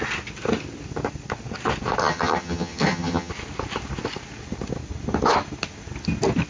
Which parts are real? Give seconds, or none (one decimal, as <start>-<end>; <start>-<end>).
0.0-2.0; 3.3-6.5